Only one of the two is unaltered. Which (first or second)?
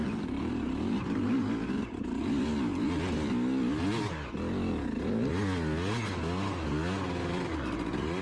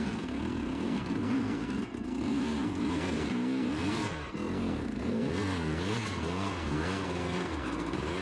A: first